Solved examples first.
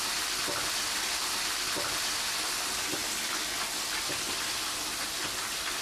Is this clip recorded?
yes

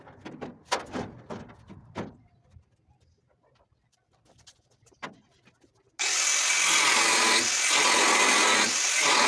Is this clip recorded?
yes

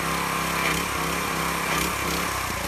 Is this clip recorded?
yes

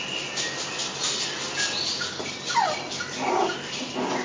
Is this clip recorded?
yes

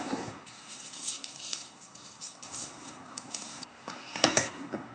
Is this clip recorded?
no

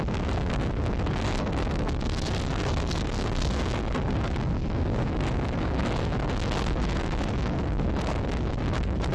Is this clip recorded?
no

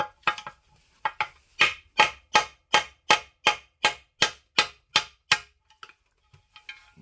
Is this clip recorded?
yes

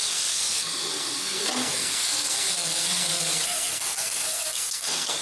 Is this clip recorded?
no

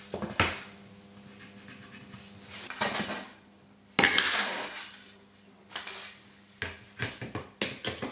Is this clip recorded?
yes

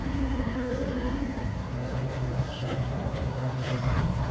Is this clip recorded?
no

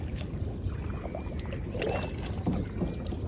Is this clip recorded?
yes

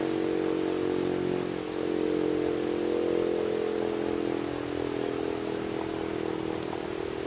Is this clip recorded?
yes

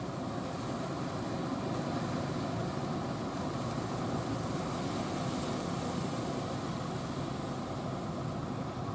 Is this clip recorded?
yes